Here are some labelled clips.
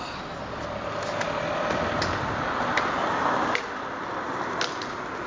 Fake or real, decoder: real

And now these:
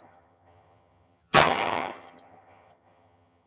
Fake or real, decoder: fake, vocoder, HiFi-GAN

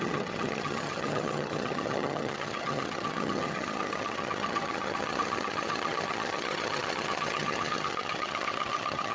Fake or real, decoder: fake, vocoder, HiFi-GAN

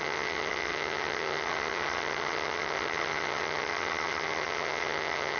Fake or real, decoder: fake, vocoder, HiFi-GAN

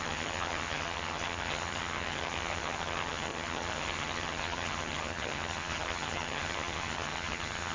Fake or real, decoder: fake, vocoder, HiFi-GAN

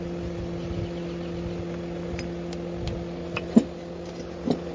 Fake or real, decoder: real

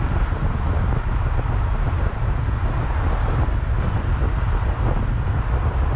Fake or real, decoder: real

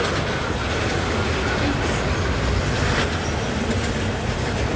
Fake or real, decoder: real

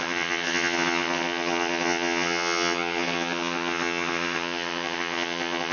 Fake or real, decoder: fake, vocoder, HiFi-GAN